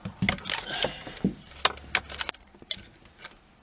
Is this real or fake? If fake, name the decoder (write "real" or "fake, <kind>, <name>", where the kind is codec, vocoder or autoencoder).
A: real